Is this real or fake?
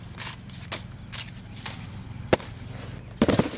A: real